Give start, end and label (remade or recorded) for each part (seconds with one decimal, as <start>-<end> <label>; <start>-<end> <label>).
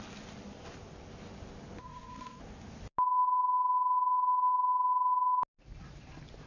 0.0-1.8 recorded; 1.8-2.4 remade; 2.4-6.5 recorded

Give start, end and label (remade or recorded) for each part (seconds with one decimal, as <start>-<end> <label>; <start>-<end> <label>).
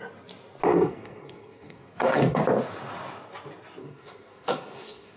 0.0-0.7 recorded; 0.7-2.4 remade; 2.4-3.8 recorded; 3.8-5.2 remade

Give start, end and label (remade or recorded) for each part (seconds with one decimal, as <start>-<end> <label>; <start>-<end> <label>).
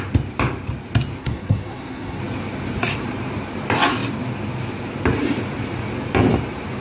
0.0-1.2 recorded; 1.2-2.2 remade; 2.2-6.8 recorded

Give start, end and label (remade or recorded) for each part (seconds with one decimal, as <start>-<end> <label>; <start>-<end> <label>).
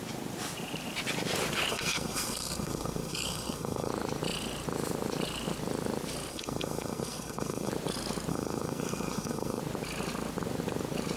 0.0-1.7 recorded; 1.7-3.9 remade; 3.9-6.3 recorded; 6.3-7.7 remade; 7.7-8.3 recorded; 8.3-9.6 remade; 9.6-11.2 recorded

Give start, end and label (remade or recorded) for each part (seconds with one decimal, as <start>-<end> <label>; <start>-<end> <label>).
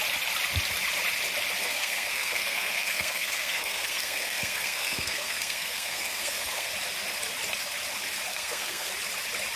0.0-1.6 recorded; 1.6-6.7 remade; 6.7-8.3 recorded; 8.3-8.9 remade; 8.9-9.6 recorded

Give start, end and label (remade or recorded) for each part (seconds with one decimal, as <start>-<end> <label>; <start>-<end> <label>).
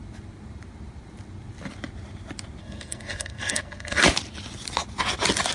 0.0-2.6 recorded; 2.6-4.0 remade; 4.0-5.5 recorded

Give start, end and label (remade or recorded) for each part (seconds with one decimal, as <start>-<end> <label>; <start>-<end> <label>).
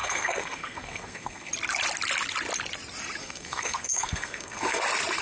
0.0-1.5 remade; 1.5-3.2 recorded; 3.2-4.8 remade; 4.8-5.2 recorded